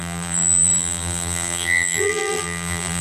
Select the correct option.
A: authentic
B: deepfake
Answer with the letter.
B